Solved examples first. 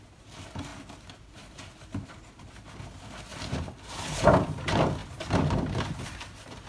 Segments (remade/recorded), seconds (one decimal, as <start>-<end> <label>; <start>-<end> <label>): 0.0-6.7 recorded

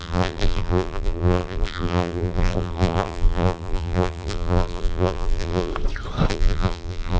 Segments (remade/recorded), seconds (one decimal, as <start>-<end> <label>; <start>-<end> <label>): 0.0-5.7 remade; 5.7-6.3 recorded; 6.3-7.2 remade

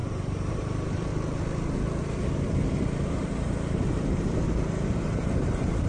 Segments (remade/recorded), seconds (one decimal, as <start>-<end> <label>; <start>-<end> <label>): 0.0-1.1 remade; 1.1-3.9 recorded; 3.9-5.9 remade